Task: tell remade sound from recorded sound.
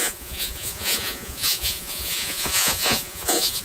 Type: remade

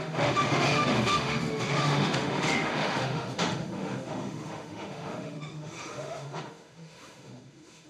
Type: remade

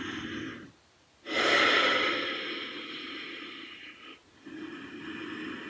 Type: recorded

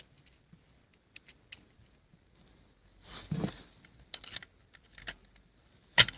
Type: recorded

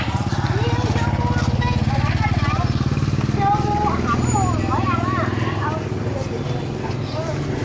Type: recorded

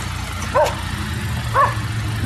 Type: recorded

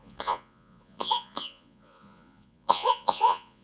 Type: remade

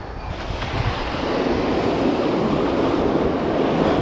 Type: recorded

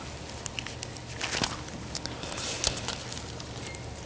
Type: recorded